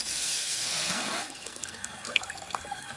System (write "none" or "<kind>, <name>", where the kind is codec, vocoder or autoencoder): codec, SNAC